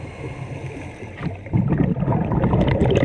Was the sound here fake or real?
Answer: real